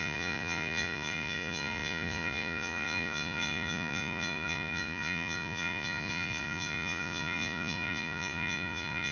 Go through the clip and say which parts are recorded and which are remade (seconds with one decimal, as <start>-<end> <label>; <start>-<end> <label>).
0.0-9.1 remade